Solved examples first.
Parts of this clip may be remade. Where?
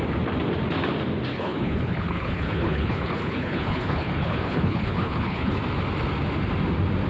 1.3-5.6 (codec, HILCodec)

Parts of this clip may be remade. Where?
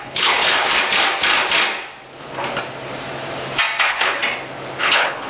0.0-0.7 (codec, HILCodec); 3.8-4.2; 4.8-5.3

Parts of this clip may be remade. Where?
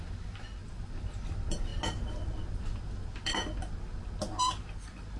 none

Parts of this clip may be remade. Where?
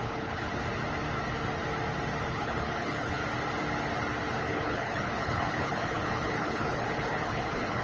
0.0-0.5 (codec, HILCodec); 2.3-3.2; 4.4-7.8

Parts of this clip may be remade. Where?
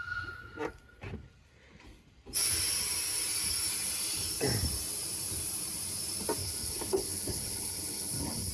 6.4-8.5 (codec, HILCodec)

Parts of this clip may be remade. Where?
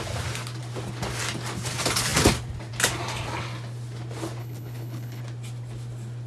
4.4-5.2 (codec, HILCodec)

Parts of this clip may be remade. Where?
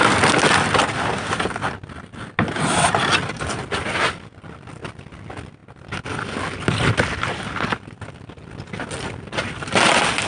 none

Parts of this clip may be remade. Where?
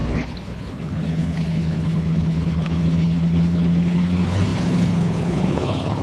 0.0-6.0 (codec, HILCodec)